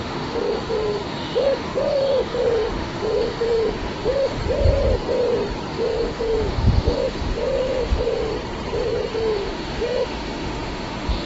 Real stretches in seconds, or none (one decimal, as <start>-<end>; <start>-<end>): 4.4-5.7; 8.3-9.1